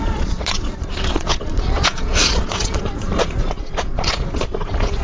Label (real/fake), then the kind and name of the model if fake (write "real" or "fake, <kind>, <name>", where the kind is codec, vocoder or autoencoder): fake, vocoder, Vocos